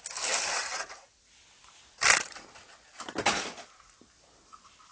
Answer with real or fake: real